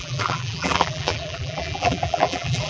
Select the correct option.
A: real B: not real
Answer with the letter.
B